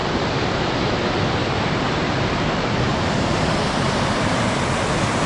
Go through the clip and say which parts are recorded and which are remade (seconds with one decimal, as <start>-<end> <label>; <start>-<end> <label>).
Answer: 0.0-0.7 remade; 0.7-1.4 recorded; 1.4-4.6 remade; 4.6-5.3 recorded